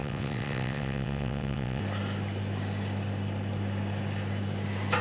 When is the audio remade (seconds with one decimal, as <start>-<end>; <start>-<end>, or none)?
0.0-1.8